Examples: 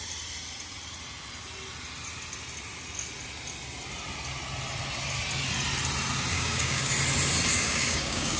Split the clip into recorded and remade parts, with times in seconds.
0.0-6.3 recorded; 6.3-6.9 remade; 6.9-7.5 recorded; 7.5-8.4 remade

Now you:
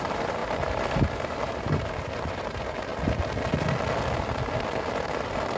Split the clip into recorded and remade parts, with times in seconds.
0.0-2.9 remade; 2.9-5.6 recorded

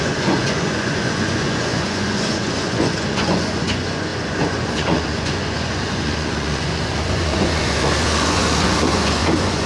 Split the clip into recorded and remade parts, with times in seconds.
0.0-9.7 remade

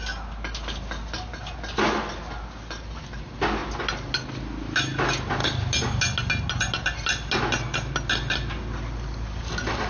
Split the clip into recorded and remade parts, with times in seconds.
0.0-9.9 recorded

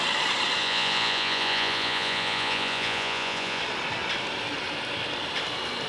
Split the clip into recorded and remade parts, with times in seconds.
0.0-0.6 recorded; 0.6-3.6 remade; 3.6-5.9 recorded

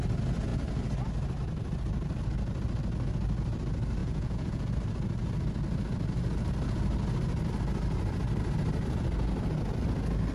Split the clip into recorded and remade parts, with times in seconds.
0.0-4.0 recorded; 4.0-4.7 remade; 4.7-10.3 recorded